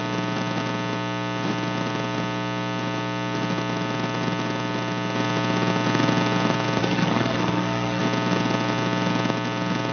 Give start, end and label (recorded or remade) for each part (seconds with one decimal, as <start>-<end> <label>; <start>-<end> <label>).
0.0-6.8 recorded; 6.8-8.0 remade; 8.0-9.9 recorded